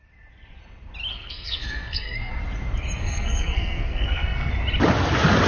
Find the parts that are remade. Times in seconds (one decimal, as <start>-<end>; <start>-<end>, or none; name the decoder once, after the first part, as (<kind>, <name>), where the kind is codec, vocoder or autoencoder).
1.1-2.3 (codec, SNAC); 3.0-4.5